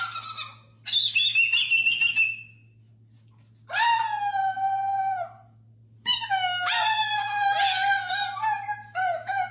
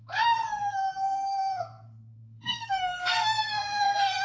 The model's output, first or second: second